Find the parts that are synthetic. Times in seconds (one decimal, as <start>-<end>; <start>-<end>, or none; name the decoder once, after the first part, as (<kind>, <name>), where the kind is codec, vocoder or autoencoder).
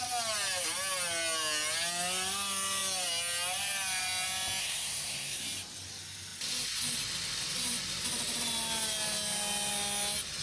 4.6-5.4 (codec, SNAC)